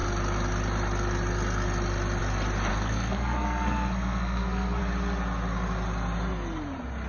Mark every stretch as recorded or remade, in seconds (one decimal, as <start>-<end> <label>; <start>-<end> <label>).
0.0-2.7 recorded; 2.7-4.8 remade; 4.8-7.1 recorded